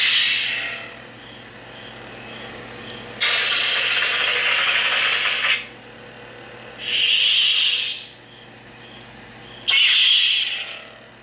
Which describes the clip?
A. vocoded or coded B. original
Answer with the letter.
B